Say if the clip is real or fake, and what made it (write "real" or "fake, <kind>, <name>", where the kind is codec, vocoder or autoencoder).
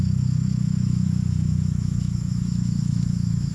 fake, autoencoder, DAC-VAE